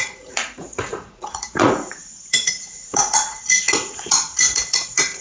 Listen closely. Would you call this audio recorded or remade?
remade